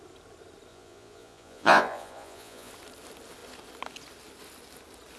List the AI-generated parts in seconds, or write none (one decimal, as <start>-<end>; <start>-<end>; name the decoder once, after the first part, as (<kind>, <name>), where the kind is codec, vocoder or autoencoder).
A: 0.7-2.7 (vocoder, Vocos)